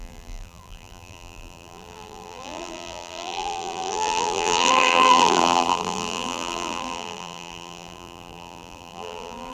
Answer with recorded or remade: remade